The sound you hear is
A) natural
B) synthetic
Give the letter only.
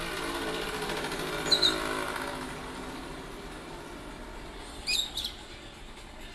A